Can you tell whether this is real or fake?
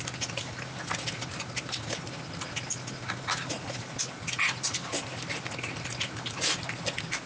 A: real